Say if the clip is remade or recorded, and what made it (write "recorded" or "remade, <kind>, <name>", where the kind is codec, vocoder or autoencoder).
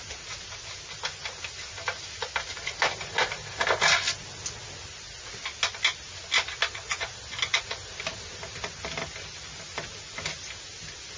recorded